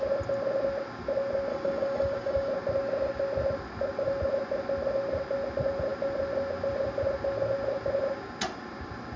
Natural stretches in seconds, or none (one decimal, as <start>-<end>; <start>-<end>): 0.0-1.5; 2.5-9.2